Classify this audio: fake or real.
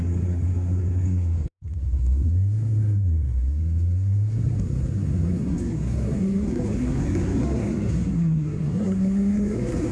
fake